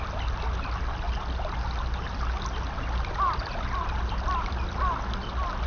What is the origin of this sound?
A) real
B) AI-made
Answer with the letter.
A